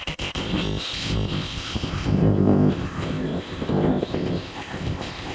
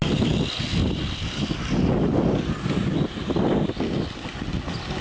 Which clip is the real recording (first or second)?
second